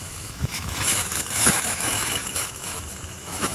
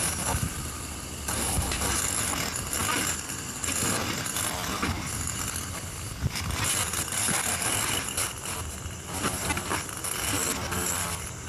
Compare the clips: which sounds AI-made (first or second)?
first